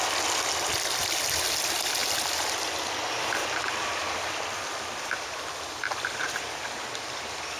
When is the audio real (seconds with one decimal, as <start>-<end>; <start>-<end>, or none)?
0.0-7.6